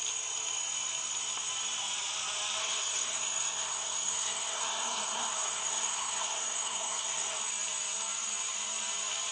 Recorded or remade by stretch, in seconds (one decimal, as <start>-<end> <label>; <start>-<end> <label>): 0.0-2.6 recorded; 2.6-7.4 remade; 7.4-9.3 recorded